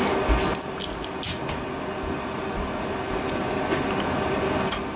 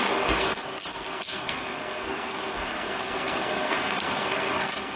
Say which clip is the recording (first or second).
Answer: first